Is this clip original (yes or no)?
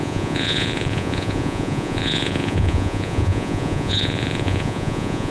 no